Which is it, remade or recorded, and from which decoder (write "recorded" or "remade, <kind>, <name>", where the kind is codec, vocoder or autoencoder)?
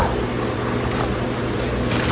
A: recorded